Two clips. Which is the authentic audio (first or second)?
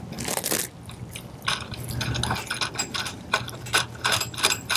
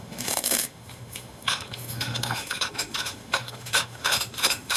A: first